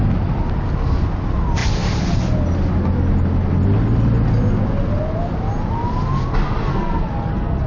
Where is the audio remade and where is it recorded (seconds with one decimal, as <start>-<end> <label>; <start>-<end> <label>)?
0.0-6.7 recorded; 6.7-7.7 remade